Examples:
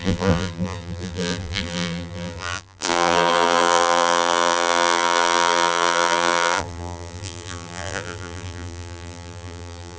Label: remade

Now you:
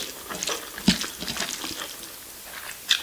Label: recorded